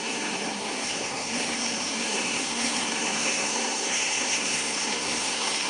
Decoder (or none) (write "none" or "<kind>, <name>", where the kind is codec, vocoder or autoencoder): codec, SNAC